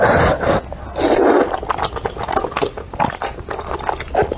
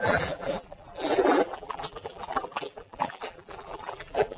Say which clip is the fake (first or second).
second